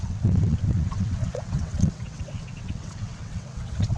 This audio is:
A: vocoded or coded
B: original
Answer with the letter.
A